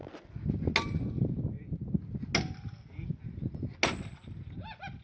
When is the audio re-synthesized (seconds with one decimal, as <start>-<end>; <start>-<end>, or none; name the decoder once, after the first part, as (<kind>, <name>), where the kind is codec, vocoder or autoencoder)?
none